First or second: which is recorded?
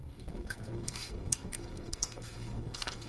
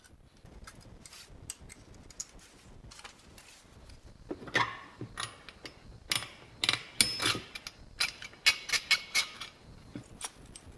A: second